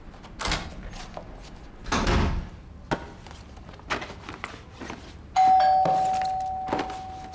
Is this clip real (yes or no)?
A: yes